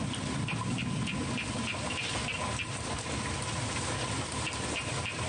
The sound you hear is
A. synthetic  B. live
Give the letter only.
B